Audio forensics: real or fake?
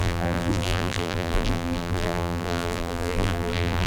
fake